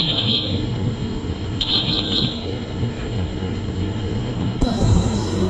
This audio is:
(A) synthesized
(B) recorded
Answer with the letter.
A